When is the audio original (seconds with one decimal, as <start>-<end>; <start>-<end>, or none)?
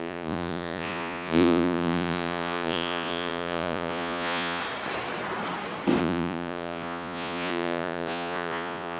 4.6-6.0